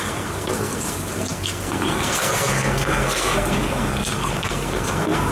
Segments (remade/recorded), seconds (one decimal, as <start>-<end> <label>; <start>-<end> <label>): 0.0-5.3 remade